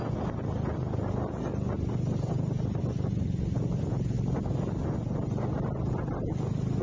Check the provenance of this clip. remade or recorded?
recorded